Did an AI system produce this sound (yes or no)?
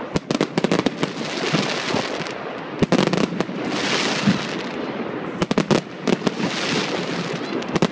no